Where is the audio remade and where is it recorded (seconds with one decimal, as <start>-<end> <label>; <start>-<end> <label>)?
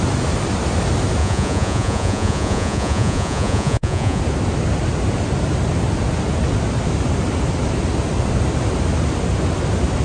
0.0-1.2 recorded; 1.2-4.2 remade; 4.2-10.0 recorded